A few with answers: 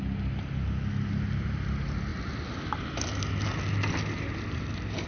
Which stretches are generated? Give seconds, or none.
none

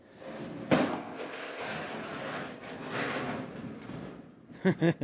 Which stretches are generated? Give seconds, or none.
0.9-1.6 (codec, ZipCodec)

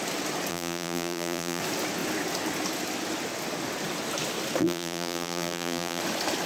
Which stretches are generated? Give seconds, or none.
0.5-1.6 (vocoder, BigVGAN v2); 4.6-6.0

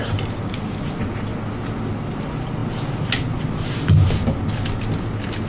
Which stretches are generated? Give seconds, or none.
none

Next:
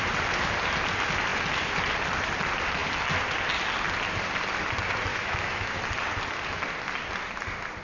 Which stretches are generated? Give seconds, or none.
5.1-5.8 (autoencoder, DAC-VAE)

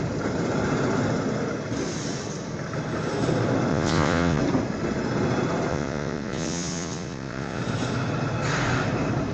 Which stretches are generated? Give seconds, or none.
3.7-4.4 (vocoder, Vocos); 5.7-7.6

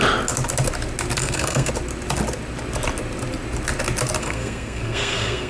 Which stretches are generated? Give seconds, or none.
1.2-1.7 (codec, SNAC); 4.2-5.5

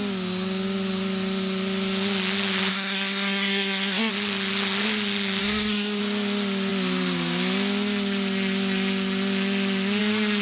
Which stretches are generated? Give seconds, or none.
2.7-4.1 (codec, SNAC); 5.4-6.0